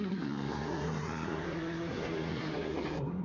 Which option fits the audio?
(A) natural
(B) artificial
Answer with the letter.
B